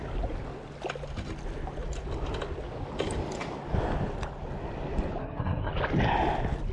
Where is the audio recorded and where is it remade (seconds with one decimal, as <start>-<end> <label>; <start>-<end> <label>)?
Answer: 0.0-5.2 recorded; 5.2-5.7 remade; 5.7-6.7 recorded